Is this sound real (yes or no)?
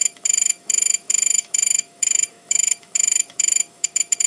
no